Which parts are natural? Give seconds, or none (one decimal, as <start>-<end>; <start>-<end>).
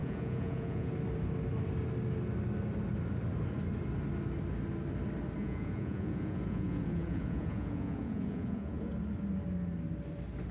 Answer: 0.9-5.4; 8.9-10.5